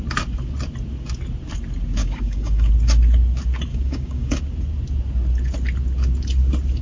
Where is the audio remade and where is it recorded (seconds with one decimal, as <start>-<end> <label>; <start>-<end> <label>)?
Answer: 0.0-2.0 recorded; 2.0-2.7 remade; 2.7-3.7 recorded; 3.7-4.4 remade; 4.4-6.8 recorded